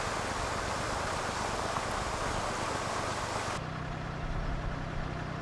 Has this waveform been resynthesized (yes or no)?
no